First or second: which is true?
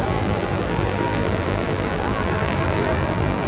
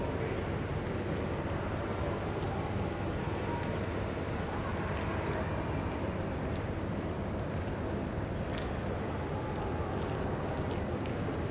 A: second